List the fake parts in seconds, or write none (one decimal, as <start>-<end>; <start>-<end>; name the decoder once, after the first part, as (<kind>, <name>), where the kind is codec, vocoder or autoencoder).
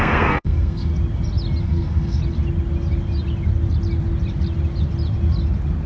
0.0-0.9 (codec, SNAC); 1.6-2.2